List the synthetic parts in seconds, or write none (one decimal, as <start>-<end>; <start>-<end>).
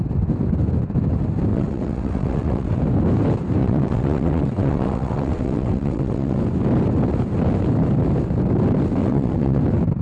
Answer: 1.5-2.8; 3.6-6.4; 9.0-9.6